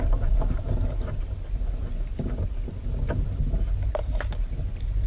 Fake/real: real